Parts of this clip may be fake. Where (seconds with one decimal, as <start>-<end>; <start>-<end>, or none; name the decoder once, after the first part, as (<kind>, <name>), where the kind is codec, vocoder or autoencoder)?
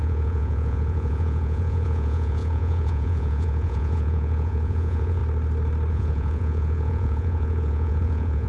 0.0-5.2 (vocoder, Vocos); 5.9-8.5